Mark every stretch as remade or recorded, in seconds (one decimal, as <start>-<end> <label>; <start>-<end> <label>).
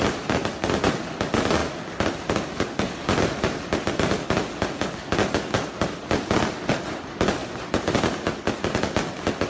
0.0-9.5 recorded